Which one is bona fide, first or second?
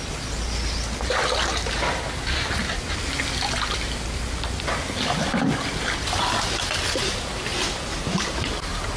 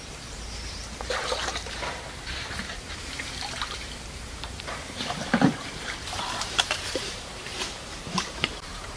first